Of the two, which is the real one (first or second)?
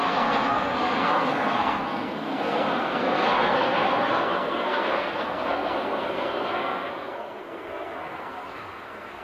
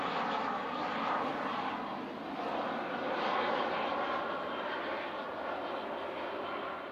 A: second